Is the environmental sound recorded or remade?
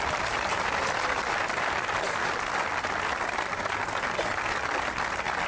recorded